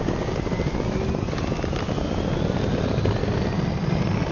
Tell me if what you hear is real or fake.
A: real